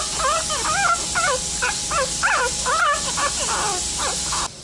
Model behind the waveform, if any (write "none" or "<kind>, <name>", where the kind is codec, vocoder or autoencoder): none